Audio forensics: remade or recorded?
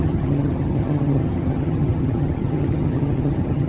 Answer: remade